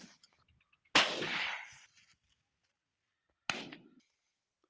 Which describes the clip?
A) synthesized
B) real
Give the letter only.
B